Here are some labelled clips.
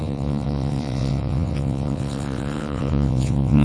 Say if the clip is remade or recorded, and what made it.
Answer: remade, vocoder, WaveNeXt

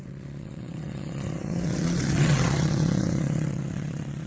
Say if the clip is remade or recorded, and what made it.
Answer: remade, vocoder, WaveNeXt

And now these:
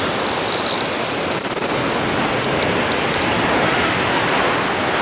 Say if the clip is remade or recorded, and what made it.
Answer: recorded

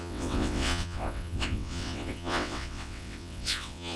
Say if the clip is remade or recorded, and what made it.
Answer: remade, vocoder, WaveNeXt